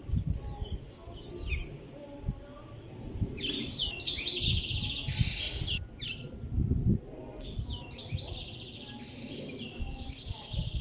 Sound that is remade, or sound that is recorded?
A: recorded